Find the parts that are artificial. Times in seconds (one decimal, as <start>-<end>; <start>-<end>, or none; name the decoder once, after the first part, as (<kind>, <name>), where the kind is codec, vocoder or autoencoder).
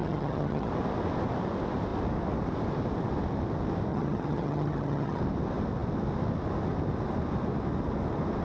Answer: 0.0-0.7 (vocoder, HiFi-GAN); 3.9-5.2